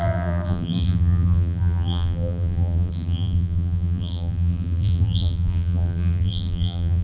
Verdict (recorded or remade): remade